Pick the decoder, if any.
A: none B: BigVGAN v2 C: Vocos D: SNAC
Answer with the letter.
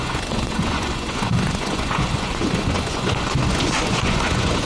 C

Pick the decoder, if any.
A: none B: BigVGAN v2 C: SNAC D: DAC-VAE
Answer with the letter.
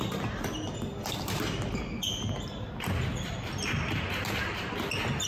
A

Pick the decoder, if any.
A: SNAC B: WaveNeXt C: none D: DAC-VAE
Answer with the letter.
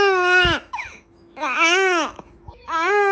D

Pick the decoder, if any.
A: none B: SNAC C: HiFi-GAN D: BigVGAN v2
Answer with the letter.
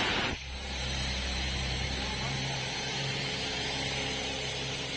D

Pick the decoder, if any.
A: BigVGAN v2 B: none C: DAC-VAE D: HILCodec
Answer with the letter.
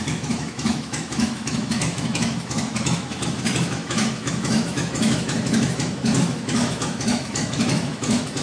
C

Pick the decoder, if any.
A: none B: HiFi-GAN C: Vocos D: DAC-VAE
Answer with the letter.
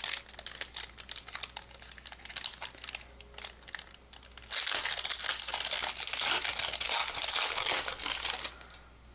A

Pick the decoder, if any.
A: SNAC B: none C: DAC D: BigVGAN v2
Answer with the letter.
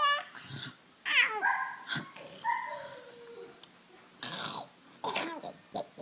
B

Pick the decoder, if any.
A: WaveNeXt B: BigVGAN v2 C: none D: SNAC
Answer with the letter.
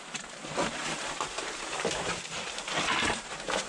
B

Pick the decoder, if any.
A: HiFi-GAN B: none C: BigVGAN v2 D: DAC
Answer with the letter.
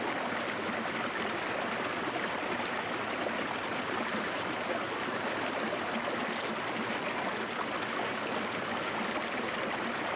B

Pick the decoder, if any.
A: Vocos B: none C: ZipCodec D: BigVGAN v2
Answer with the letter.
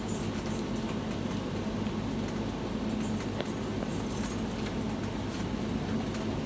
B